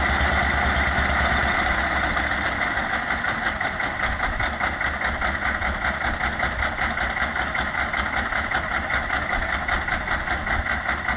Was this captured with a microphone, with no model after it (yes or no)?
yes